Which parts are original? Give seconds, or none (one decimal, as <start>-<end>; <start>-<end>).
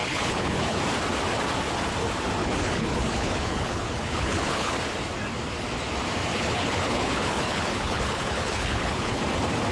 0.8-2.4; 4.7-6.3; 9.2-9.7